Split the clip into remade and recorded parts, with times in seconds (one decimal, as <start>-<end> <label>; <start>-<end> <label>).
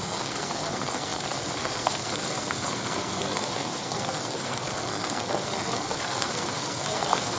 0.0-7.4 remade